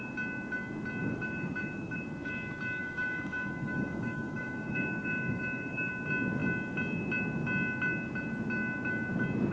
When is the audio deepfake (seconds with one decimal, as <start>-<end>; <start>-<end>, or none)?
1.0-2.0; 2.8-5.9